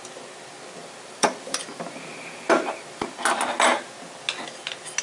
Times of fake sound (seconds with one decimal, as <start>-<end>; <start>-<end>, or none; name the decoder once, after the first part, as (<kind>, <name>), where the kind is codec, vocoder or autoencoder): 0.8-3.8 (vocoder, BigVGAN v2)